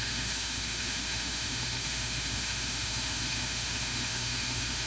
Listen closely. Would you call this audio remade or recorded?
remade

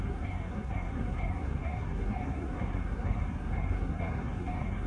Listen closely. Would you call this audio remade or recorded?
remade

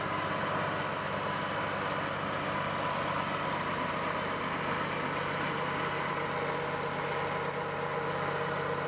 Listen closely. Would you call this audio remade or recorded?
recorded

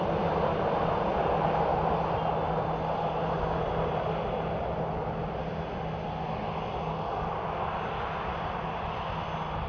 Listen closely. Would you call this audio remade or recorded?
recorded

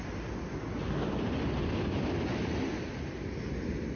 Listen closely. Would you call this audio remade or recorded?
recorded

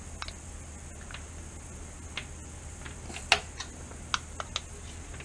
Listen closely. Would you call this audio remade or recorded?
recorded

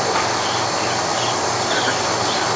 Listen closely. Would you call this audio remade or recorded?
remade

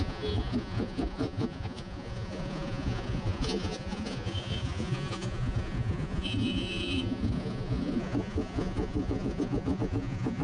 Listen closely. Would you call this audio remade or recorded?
remade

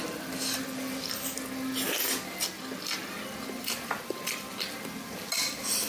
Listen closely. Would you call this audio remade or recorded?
recorded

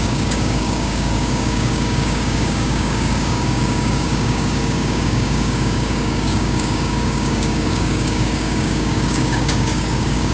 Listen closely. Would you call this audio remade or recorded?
remade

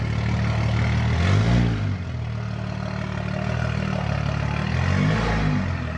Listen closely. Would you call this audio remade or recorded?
recorded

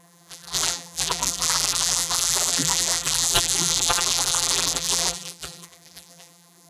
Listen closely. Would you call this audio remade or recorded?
remade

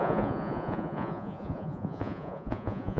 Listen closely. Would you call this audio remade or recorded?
remade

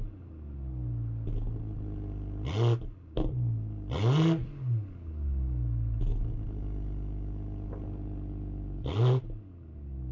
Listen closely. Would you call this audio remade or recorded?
recorded